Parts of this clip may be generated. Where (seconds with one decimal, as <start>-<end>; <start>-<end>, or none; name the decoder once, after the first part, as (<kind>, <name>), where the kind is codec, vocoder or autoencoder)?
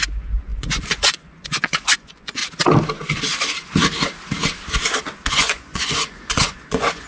0.0-2.4 (vocoder, Vocos); 5.3-7.1